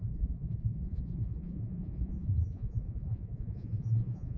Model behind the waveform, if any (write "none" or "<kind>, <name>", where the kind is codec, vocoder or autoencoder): vocoder, Vocos